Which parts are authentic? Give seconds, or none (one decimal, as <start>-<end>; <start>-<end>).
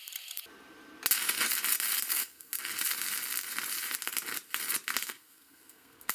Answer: 0.0-2.1; 2.5-5.0